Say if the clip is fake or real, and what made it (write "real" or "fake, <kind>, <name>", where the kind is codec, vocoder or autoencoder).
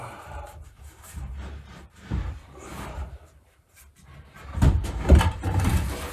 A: fake, vocoder, BigVGAN v2